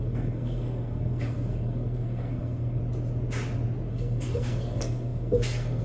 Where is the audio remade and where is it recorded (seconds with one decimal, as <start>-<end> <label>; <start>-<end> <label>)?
0.0-2.8 remade; 2.8-3.9 recorded; 3.9-5.8 remade